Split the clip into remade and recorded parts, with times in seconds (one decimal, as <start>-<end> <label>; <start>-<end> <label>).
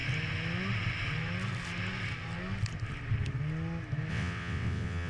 0.0-4.1 recorded; 4.1-5.1 remade